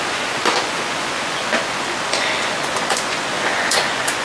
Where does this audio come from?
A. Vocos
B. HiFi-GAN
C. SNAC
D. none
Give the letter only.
A